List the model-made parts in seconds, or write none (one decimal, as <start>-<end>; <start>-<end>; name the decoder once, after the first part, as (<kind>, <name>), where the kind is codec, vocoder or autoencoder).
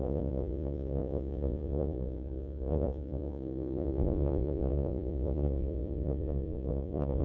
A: 0.0-7.2 (vocoder, Vocos)